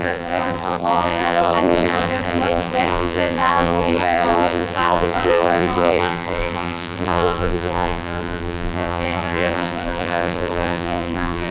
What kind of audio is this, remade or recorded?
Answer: remade